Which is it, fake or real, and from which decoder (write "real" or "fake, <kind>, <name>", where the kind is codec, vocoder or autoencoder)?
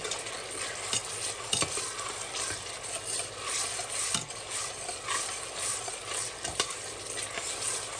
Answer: real